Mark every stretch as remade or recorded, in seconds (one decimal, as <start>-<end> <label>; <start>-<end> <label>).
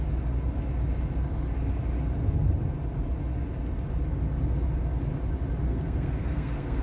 0.0-5.7 recorded; 5.7-6.8 remade